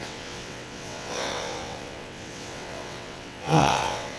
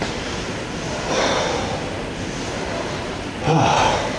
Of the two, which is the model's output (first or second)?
first